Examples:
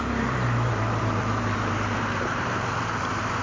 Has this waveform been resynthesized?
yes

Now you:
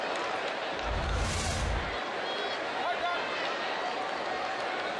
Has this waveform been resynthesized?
no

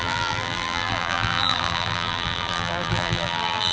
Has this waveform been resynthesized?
yes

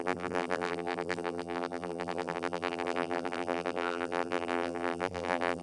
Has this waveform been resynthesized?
yes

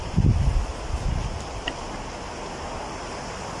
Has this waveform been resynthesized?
yes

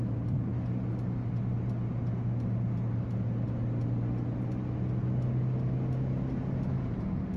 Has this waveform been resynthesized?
no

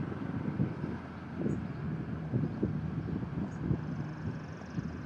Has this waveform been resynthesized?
no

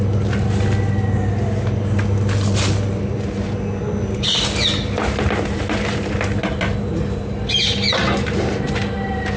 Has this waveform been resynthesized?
no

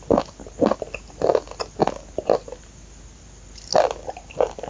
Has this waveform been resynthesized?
no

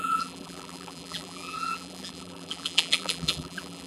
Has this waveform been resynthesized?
yes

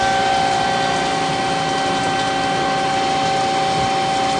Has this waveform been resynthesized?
no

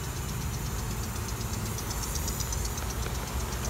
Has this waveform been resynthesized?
no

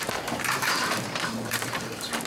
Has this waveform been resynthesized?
yes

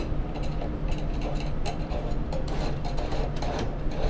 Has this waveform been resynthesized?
yes